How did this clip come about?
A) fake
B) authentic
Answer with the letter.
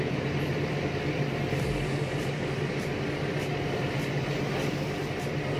B